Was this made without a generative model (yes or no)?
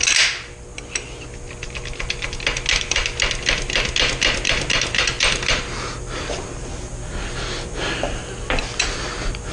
yes